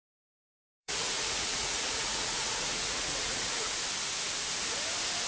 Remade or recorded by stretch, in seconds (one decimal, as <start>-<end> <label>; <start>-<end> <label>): 0.0-0.8 recorded; 0.8-3.7 remade; 3.7-5.3 recorded